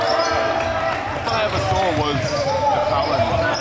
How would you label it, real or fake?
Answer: real